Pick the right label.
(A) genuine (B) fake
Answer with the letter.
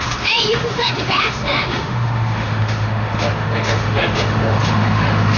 B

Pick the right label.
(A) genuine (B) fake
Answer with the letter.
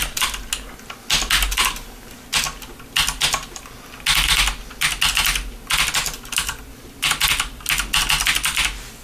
A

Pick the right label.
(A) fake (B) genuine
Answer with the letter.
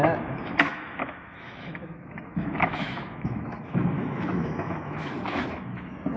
A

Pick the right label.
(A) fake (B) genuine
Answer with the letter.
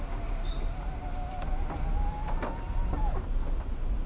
B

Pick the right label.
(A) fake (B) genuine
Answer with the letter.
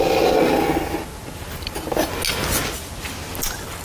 B